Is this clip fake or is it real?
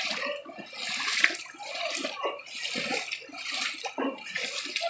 real